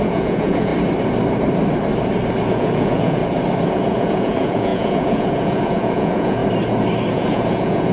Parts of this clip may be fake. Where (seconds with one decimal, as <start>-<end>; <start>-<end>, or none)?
0.0-0.7; 2.5-3.2; 3.7-6.4; 7.1-7.9